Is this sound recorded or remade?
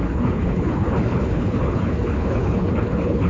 remade